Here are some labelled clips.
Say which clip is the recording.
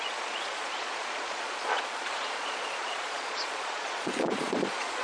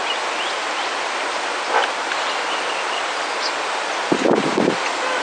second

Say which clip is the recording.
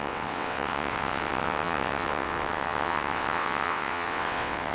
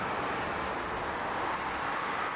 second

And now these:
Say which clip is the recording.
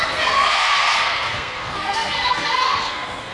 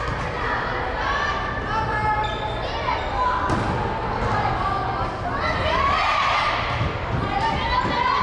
second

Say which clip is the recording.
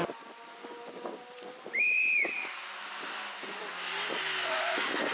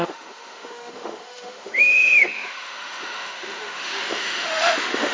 first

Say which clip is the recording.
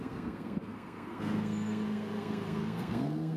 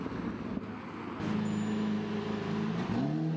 second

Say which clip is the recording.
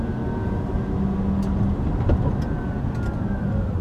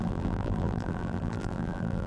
first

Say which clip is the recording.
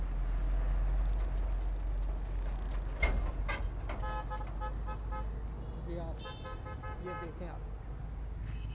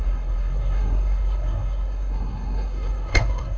first